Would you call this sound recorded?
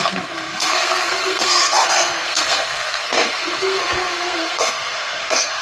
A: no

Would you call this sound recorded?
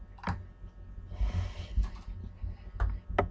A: yes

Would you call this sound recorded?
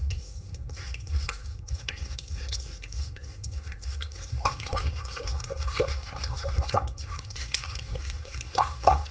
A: no